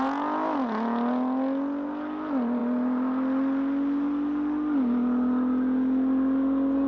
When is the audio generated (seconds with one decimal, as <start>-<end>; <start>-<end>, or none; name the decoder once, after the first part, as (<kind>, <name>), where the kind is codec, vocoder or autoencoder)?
none